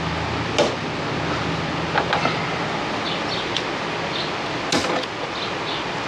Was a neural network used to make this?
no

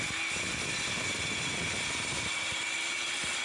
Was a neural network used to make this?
yes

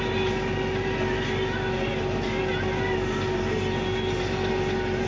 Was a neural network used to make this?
no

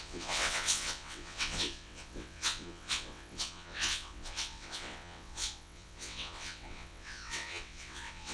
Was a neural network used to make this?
yes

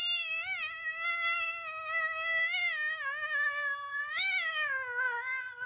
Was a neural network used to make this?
no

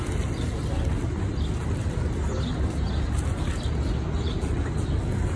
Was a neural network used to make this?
no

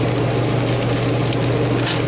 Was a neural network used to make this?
no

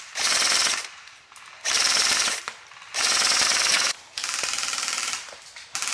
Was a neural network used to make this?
yes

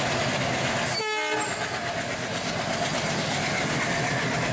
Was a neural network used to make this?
no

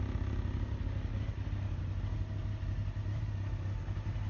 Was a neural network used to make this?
no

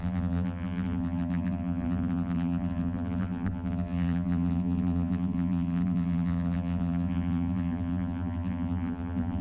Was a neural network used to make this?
yes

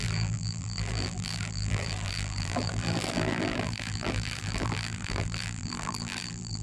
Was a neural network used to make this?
yes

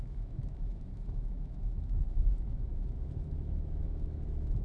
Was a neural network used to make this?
yes